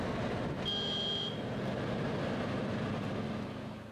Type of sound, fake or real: real